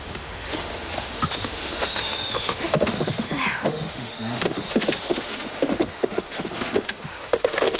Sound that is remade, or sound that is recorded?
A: remade